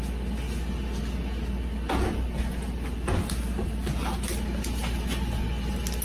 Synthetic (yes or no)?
no